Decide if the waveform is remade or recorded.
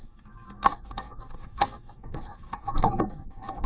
remade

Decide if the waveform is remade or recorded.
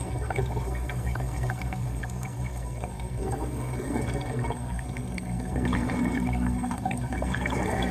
remade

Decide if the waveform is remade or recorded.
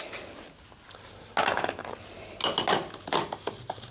recorded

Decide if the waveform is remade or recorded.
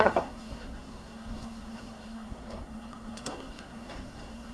remade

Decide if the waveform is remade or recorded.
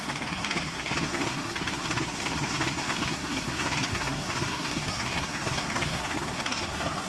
remade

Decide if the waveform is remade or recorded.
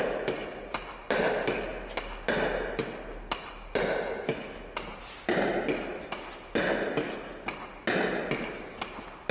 recorded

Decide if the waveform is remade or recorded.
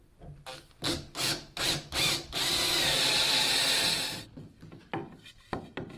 recorded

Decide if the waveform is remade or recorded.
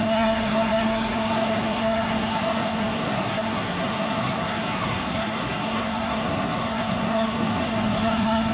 remade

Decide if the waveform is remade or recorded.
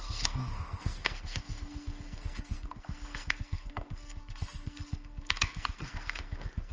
remade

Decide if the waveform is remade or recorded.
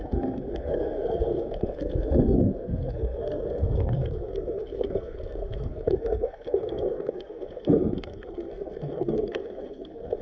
remade